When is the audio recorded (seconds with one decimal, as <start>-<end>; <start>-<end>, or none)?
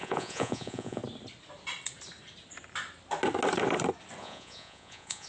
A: 1.0-4.2